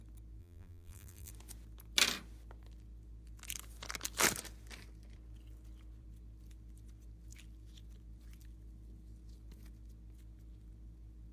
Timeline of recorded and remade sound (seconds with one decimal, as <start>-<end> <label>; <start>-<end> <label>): 0.0-0.4 recorded; 0.4-1.3 remade; 1.3-11.3 recorded